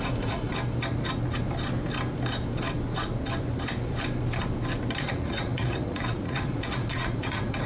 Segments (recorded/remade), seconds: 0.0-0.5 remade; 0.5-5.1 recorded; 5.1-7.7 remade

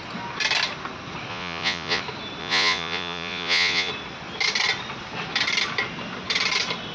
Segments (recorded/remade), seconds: 0.0-1.3 recorded; 1.3-2.0 remade; 2.0-2.4 recorded; 2.4-3.9 remade; 3.9-6.9 recorded

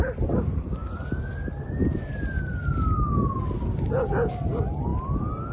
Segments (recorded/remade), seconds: 0.0-5.5 recorded